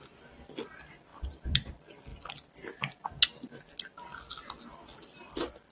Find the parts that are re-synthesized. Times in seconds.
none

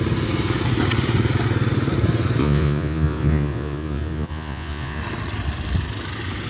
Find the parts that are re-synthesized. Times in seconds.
2.4-5.0

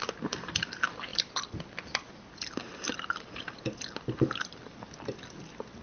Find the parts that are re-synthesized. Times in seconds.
none

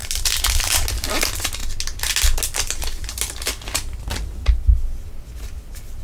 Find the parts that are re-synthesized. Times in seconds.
none

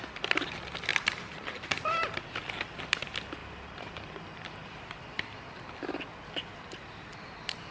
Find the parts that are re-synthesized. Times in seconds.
0.9-2.3; 3.4-3.9; 4.6-5.7